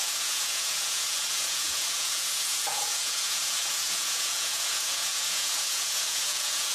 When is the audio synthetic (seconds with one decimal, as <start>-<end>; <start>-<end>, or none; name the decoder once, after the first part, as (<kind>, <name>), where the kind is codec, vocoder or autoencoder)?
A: 0.0-6.7 (vocoder, Vocos)